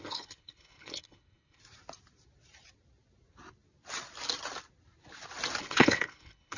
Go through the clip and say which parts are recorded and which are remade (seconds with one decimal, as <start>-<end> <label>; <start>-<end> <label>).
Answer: 0.0-1.6 remade; 1.6-5.6 recorded; 5.6-6.6 remade